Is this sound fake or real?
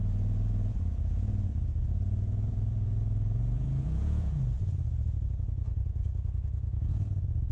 fake